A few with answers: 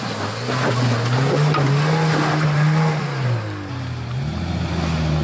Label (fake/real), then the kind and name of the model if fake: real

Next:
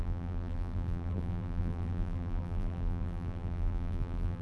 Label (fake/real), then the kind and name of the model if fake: fake, vocoder, BigVGAN v2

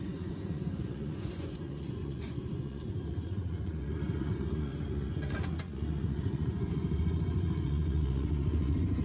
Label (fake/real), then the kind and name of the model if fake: fake, vocoder, Vocos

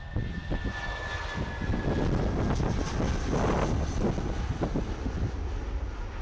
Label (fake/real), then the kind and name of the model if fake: real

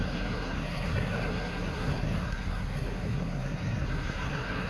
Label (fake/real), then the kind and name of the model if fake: fake, codec, SNAC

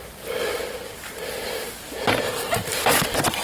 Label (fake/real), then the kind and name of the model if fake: real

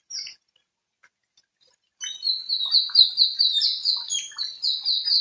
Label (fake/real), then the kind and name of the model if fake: real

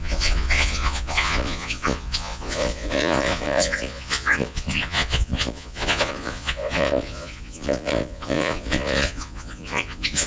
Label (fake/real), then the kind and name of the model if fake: fake, vocoder, Vocos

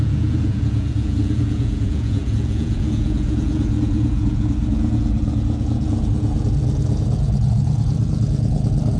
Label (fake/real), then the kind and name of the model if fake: fake, vocoder, Vocos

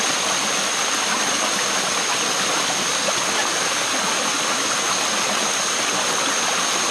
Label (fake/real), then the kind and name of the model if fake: real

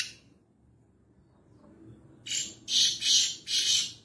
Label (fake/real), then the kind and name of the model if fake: real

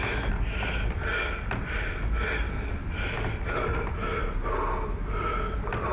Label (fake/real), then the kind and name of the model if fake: real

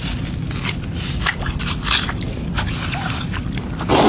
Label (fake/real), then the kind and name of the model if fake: real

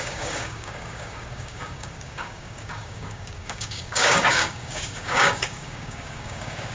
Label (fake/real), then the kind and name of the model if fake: fake, codec, DAC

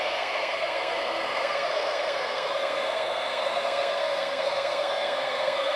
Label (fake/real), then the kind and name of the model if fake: fake, codec, SNAC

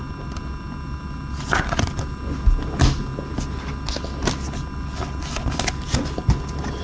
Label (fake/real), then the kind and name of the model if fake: real